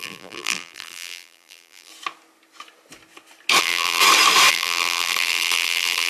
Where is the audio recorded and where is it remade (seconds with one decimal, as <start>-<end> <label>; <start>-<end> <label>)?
0.0-1.9 remade; 1.9-3.6 recorded; 3.6-4.0 remade; 4.0-4.5 recorded; 4.5-6.1 remade

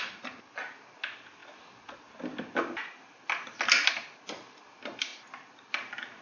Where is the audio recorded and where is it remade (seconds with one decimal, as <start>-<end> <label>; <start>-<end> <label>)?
0.0-6.2 recorded

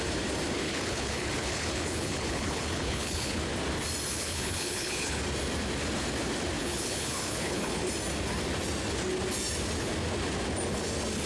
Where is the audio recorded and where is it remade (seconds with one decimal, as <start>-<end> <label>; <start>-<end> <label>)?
0.0-0.6 recorded; 0.6-3.4 remade; 3.4-4.1 recorded; 4.1-5.2 remade; 5.2-6.6 recorded; 6.6-7.8 remade; 7.8-11.3 recorded